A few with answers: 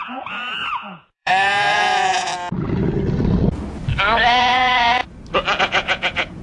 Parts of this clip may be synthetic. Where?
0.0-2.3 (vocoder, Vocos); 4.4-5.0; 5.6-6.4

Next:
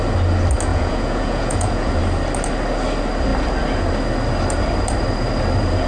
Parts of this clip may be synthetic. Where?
0.7-2.0 (vocoder, Vocos)

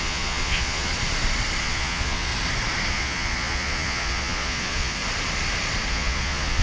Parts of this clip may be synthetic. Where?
0.0-0.9 (vocoder, Vocos); 1.6-2.3; 2.9-5.0; 5.9-6.6

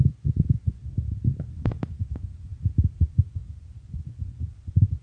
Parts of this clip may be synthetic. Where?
0.0-0.8 (vocoder, Vocos); 1.4-2.5; 3.0-5.0

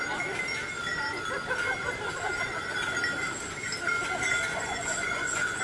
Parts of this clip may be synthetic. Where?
4.5-5.6 (vocoder, Vocos)

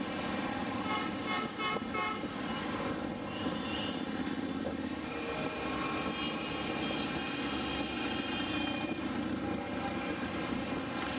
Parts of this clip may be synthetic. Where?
none